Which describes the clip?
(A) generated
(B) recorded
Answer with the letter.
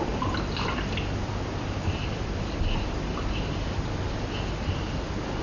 B